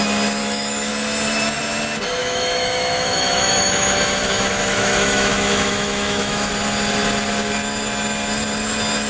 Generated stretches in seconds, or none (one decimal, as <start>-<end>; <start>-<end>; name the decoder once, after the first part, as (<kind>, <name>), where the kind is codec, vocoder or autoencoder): 0.4-0.9 (autoencoder, DAC-VAE); 2.2-6.5